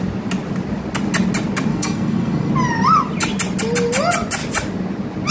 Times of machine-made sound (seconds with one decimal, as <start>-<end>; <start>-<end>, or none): 1.7-2.5